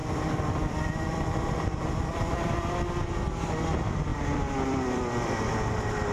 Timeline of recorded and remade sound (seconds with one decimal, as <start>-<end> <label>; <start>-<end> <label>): 0.0-2.7 remade; 2.7-4.1 recorded; 4.1-5.4 remade; 5.4-6.1 recorded